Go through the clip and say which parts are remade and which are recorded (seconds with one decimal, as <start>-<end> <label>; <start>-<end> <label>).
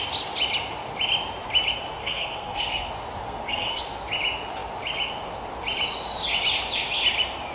0.0-2.0 recorded; 2.0-2.9 remade; 2.9-3.3 recorded; 3.3-3.8 remade; 3.8-7.5 recorded